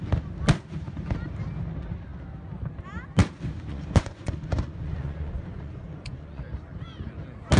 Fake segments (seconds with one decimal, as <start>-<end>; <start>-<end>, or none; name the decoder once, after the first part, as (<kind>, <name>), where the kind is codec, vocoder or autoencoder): 3.7-6.4 (vocoder, Vocos)